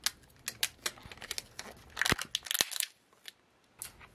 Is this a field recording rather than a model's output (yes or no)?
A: yes